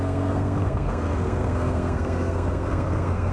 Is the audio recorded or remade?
remade